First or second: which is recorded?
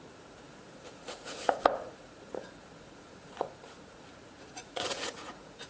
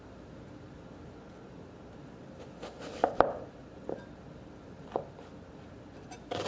second